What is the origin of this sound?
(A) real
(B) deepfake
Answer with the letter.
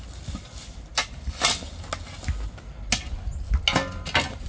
A